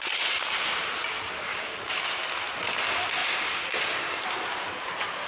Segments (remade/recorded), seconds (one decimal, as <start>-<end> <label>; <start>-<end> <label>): 0.0-1.5 recorded; 1.5-2.2 remade; 2.2-5.3 recorded